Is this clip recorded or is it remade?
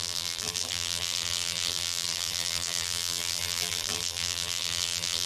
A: remade